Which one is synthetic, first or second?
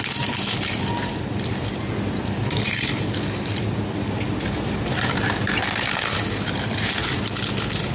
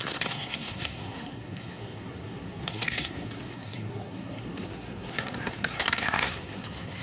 second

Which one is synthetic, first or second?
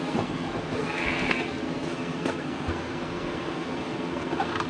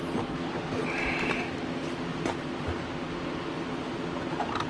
first